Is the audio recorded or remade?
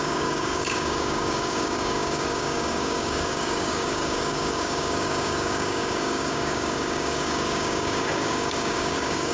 remade